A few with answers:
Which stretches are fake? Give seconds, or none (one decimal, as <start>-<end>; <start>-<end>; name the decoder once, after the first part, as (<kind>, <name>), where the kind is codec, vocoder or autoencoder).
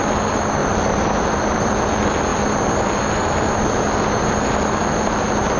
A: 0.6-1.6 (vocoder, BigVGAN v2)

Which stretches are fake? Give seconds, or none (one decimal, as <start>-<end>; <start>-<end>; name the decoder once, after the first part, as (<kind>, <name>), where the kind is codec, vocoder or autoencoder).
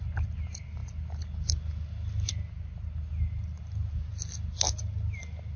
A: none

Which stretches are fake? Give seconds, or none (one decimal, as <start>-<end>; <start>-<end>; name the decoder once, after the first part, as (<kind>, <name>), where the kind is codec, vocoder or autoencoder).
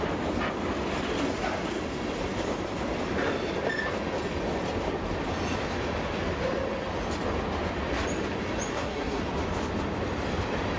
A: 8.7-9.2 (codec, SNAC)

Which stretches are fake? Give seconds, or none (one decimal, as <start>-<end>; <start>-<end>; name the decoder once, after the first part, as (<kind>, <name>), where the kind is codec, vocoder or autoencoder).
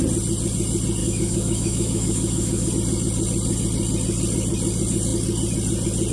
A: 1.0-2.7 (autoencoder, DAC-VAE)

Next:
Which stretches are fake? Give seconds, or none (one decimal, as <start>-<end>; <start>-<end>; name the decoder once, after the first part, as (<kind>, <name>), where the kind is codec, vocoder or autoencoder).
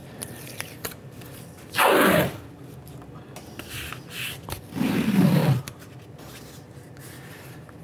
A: 0.0-5.4 (vocoder, BigVGAN v2); 7.3-7.8